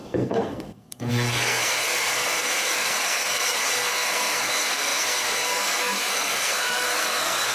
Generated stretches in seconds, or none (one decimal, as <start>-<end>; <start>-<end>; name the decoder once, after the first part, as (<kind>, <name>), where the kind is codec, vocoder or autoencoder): 0.0-7.5 (codec, SNAC)